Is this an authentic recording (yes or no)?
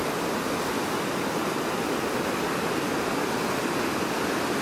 yes